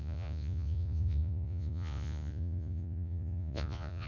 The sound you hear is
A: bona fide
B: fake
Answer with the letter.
B